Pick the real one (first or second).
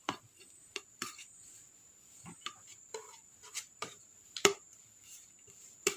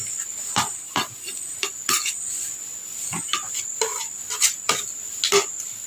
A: second